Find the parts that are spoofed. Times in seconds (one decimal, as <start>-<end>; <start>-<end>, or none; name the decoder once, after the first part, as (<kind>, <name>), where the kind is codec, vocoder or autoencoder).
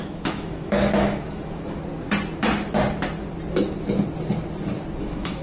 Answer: 0.0-1.8 (autoencoder, DAC-VAE); 5.0-5.4